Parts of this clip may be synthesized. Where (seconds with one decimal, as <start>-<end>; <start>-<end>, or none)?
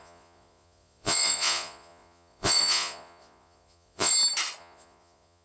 0.0-4.1; 4.6-5.4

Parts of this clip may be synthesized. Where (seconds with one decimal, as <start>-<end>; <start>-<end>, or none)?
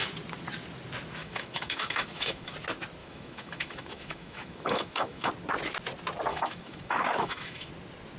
1.2-2.5; 3.0-5.3; 6.3-7.7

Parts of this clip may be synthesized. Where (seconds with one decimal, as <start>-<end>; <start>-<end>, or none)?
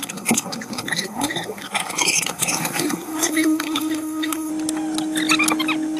0.0-4.5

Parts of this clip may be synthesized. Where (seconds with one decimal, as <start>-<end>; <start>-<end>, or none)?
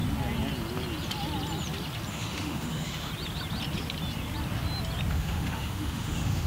2.1-3.1; 5.1-6.5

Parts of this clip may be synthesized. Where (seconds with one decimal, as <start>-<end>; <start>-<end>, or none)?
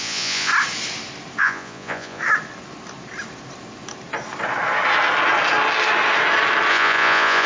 0.0-0.5; 1.4-2.2; 6.7-7.5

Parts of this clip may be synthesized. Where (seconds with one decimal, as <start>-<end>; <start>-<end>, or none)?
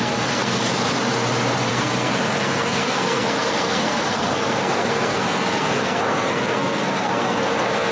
0.0-0.7; 1.7-7.9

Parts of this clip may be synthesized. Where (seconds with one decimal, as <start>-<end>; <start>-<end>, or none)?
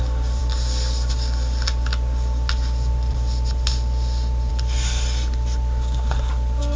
none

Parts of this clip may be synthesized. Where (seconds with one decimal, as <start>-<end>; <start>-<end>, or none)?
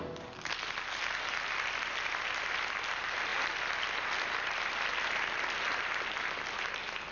none